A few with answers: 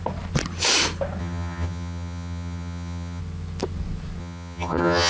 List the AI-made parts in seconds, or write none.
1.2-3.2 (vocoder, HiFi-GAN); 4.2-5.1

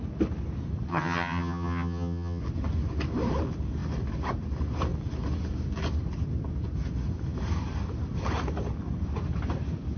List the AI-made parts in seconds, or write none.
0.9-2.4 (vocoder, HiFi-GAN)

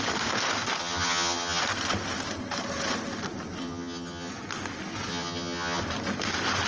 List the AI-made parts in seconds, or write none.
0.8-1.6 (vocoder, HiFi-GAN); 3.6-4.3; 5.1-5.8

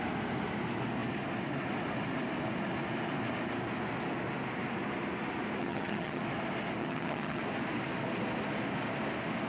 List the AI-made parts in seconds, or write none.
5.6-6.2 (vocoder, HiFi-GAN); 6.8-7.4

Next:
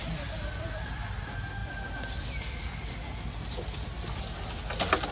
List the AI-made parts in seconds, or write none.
none

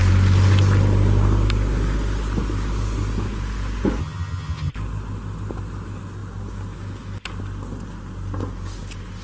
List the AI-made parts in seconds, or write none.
4.0-4.7 (vocoder, HiFi-GAN)